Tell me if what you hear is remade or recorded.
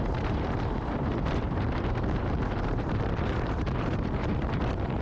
remade